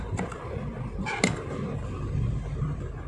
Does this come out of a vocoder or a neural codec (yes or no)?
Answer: no